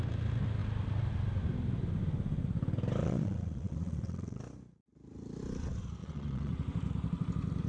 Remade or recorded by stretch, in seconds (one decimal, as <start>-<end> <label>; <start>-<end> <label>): 0.0-3.0 recorded; 3.0-4.4 remade; 4.4-6.0 recorded; 6.0-6.5 remade; 6.5-7.7 recorded

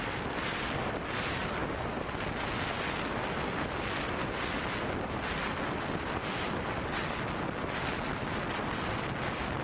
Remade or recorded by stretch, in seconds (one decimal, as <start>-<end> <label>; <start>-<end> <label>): 0.0-9.6 recorded